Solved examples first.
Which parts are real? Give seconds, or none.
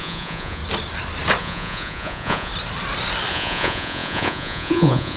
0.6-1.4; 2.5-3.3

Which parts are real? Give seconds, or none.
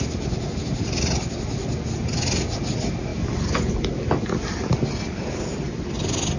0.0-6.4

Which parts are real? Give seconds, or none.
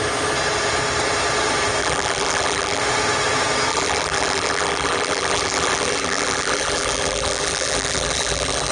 0.0-1.8; 2.8-3.7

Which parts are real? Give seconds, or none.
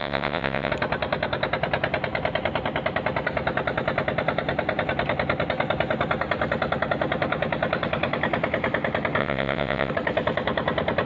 0.7-9.2; 9.9-11.1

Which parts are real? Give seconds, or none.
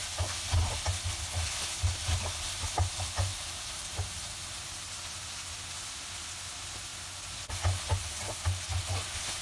0.0-3.3; 4.4-9.4